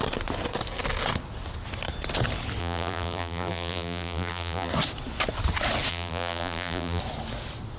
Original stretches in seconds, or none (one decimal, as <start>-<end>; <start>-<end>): 0.0-2.6; 4.7-5.9; 7.0-7.8